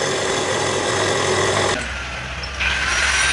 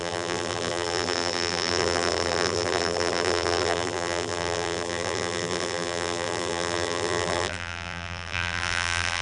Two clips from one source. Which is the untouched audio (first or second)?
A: first